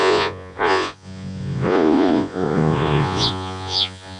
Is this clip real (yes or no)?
no